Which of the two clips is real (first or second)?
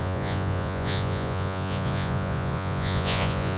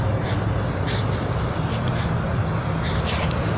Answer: second